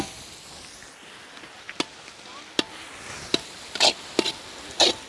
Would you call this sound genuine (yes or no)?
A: yes